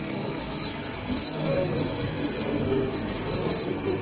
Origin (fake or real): fake